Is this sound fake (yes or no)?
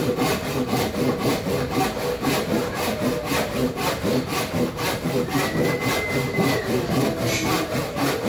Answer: no